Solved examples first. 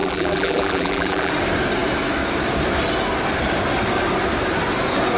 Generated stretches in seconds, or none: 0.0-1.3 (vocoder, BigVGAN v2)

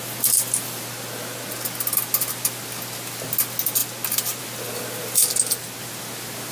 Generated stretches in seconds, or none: none

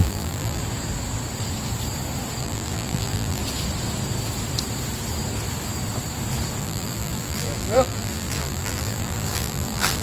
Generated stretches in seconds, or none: 0.0-0.6 (vocoder, BigVGAN v2); 2.4-3.4; 6.6-10.0

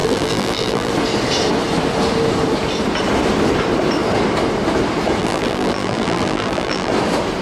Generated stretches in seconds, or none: 0.0-0.9 (vocoder, BigVGAN v2); 5.2-6.9